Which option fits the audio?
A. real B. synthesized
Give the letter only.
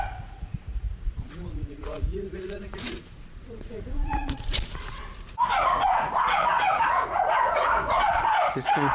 B